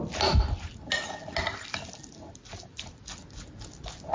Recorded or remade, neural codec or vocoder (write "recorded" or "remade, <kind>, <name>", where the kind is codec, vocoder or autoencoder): recorded